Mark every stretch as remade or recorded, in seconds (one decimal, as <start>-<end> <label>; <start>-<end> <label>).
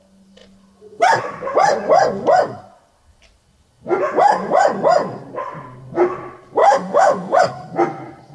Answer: 0.0-6.6 recorded; 6.6-7.4 remade; 7.4-8.3 recorded